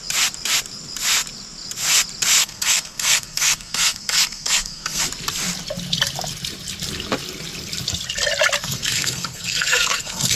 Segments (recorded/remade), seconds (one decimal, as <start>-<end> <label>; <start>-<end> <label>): 0.0-2.4 recorded; 2.4-5.0 remade; 5.0-8.6 recorded; 8.6-10.4 remade